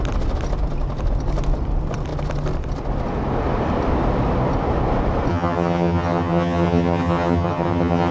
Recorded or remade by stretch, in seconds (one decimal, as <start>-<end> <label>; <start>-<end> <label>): 0.0-5.3 recorded; 5.3-8.1 remade